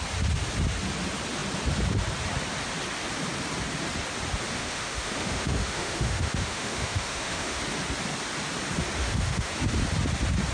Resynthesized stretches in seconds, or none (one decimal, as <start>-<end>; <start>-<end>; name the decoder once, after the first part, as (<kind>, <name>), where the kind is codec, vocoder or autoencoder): 4.6-7.6 (autoencoder, DAC-VAE); 9.0-9.5